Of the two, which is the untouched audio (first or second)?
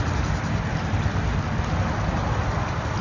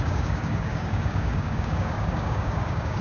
first